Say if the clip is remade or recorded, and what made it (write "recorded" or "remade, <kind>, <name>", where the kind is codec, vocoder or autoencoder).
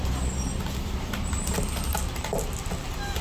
recorded